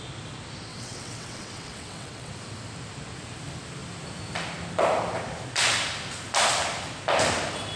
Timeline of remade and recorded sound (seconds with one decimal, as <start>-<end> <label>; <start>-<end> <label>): 0.0-0.7 recorded; 0.7-2.3 remade; 2.3-7.8 recorded